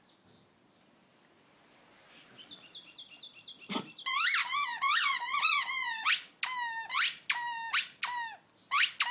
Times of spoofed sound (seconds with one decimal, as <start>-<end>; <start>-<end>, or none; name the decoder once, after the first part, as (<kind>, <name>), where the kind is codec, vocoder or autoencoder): 4.4-6.1 (vocoder, Vocos)